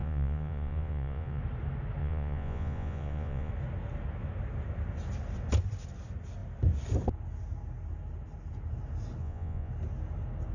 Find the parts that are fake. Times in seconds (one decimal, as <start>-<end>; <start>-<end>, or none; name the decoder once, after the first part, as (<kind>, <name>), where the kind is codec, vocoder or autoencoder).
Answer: 0.0-1.4 (vocoder, Vocos); 2.0-3.5; 9.2-9.7